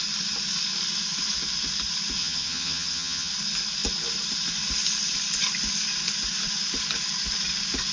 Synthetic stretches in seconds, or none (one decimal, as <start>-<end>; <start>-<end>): 2.2-3.3